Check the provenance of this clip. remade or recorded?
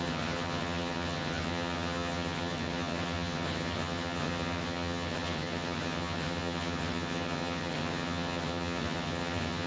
remade